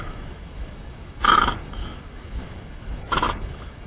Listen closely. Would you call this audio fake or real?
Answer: fake